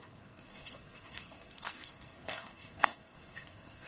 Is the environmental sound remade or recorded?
remade